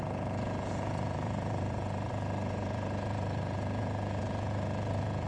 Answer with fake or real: fake